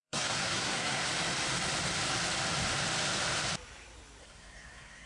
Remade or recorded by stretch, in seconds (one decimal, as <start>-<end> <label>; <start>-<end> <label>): 0.0-1.1 remade; 1.1-4.2 recorded; 4.2-5.1 remade